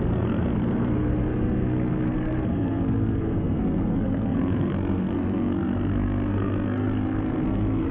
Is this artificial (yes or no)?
yes